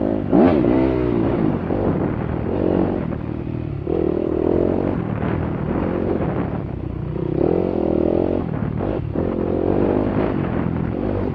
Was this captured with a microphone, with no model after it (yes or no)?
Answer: no